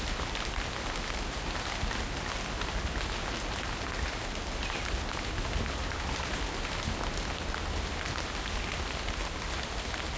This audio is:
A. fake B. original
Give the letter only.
B